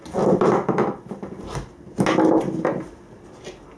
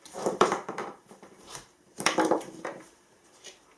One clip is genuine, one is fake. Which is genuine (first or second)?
first